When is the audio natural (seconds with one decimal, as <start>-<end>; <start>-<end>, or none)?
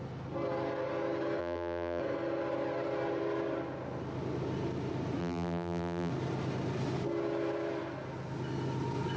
0.0-1.4; 2.0-5.2; 6.1-9.2